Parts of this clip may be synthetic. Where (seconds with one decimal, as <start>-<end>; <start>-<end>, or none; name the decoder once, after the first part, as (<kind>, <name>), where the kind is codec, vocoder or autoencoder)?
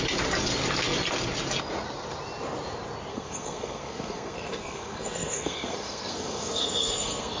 3.1-7.4 (codec, SNAC)